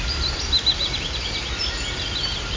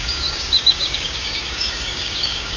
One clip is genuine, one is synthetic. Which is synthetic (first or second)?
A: second